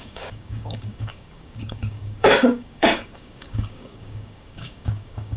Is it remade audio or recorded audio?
remade